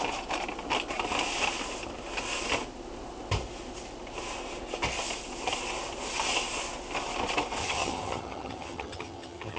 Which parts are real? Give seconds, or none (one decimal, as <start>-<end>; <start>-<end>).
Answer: 0.0-7.6